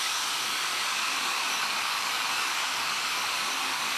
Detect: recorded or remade remade